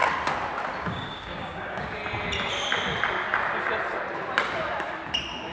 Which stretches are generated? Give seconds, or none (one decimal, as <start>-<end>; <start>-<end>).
0.8-2.0